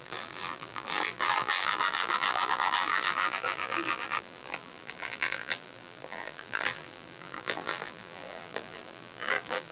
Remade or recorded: remade